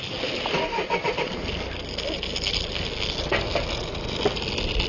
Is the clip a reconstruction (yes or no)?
no